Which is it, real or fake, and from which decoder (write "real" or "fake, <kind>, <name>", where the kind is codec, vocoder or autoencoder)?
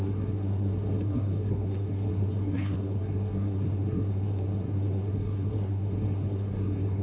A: fake, codec, SNAC